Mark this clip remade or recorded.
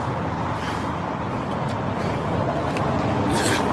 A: recorded